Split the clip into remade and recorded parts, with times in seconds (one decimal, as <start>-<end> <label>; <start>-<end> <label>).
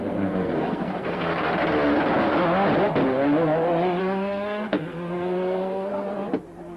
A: 0.0-1.3 remade; 1.3-4.0 recorded; 4.0-5.9 remade; 5.9-6.8 recorded